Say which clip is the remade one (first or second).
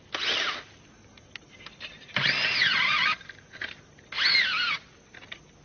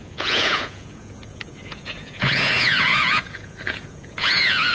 second